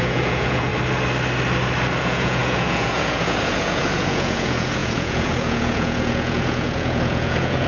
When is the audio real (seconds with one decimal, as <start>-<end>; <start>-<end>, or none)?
0.7-2.0